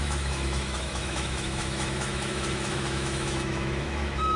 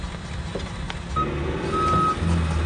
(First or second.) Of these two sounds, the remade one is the first